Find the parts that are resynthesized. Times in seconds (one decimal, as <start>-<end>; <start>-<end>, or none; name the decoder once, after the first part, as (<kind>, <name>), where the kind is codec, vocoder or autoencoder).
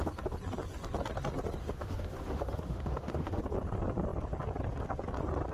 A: 1.6-3.4 (autoencoder, DAC-VAE)